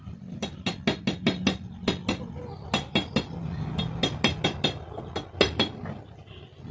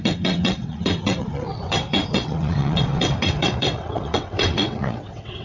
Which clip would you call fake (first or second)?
second